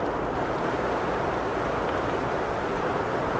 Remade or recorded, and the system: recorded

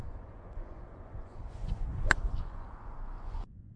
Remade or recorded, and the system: remade, vocoder, Vocos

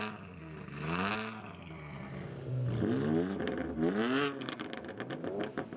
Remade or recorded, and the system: recorded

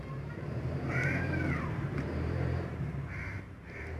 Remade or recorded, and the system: remade, vocoder, BigVGAN v2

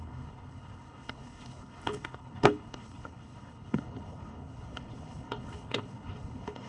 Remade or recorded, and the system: remade, codec, HILCodec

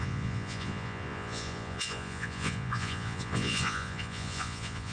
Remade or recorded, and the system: remade, vocoder, Vocos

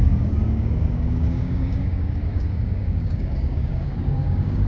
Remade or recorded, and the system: remade, codec, DAC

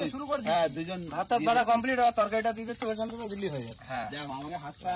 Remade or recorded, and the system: remade, vocoder, BigVGAN v2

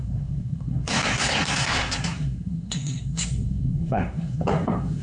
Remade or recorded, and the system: remade, codec, SNAC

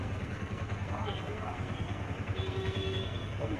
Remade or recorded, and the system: remade, codec, SNAC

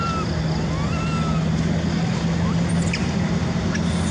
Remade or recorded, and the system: recorded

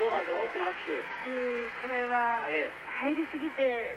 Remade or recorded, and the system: remade, codec, SNAC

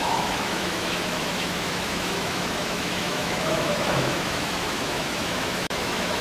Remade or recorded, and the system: remade, autoencoder, DAC-VAE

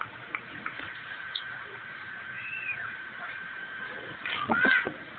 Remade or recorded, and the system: remade, vocoder, Vocos